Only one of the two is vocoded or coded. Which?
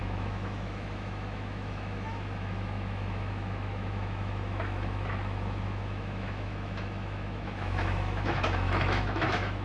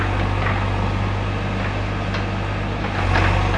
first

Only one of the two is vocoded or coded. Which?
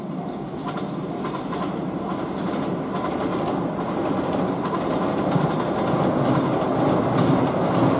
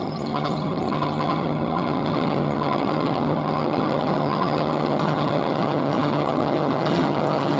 second